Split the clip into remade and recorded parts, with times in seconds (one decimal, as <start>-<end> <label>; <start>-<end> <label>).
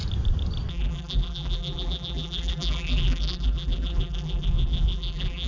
0.0-0.7 recorded; 0.7-5.5 remade